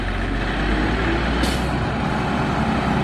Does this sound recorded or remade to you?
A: recorded